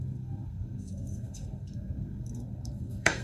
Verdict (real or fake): fake